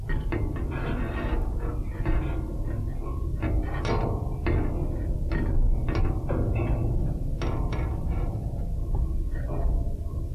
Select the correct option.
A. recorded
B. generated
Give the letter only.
A